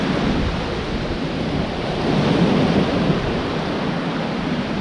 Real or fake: real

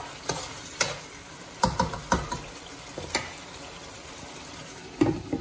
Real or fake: real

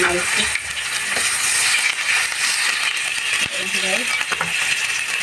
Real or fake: real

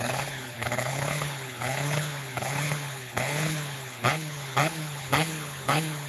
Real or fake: fake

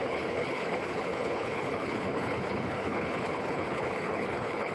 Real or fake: fake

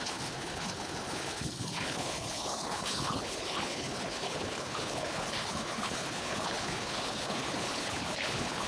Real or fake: fake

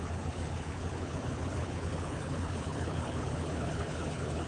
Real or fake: fake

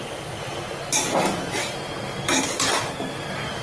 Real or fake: real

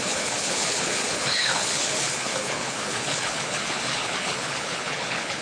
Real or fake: fake